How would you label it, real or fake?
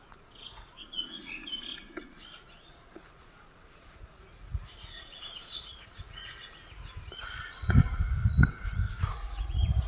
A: fake